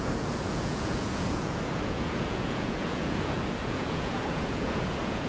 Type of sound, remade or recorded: remade